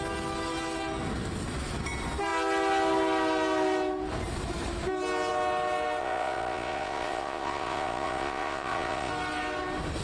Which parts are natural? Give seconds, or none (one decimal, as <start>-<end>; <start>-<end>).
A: 0.0-6.0; 9.1-10.0